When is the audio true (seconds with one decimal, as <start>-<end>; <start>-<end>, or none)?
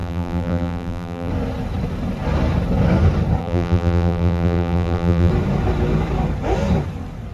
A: 1.3-3.4; 5.3-7.3